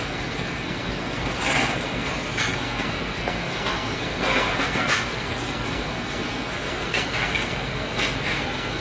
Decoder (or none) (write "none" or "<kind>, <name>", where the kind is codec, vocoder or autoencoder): codec, SNAC